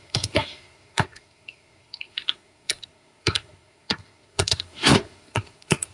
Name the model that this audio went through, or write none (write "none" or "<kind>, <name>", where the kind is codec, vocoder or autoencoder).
codec, SNAC